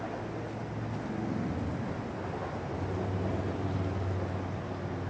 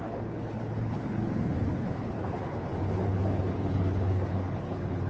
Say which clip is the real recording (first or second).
first